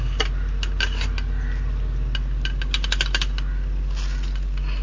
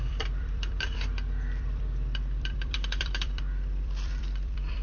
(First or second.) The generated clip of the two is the second